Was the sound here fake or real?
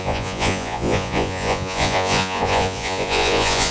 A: fake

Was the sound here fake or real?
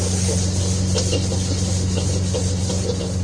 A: real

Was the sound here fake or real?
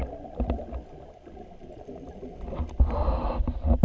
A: real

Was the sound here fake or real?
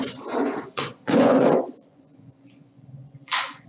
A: fake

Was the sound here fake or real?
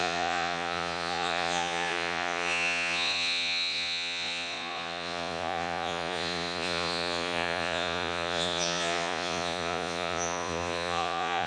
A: fake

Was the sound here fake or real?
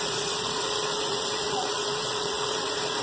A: fake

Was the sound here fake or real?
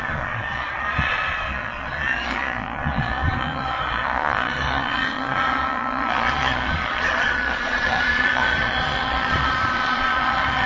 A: fake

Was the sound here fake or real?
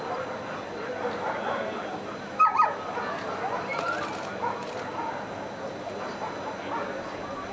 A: real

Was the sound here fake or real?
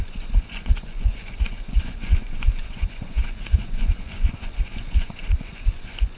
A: fake